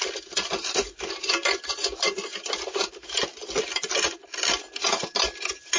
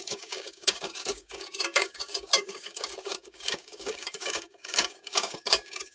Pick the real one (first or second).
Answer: first